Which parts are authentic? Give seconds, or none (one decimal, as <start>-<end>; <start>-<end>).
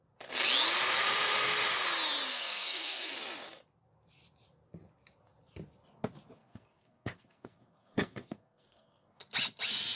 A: 0.0-2.3; 3.1-6.4; 9.2-10.0